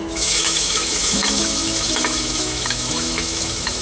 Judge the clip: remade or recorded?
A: remade